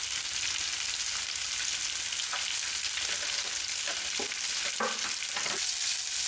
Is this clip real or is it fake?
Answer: real